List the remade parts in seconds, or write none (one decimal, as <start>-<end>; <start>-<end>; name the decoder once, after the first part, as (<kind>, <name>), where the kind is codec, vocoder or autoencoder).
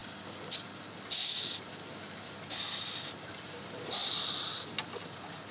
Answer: 3.3-5.5 (vocoder, BigVGAN v2)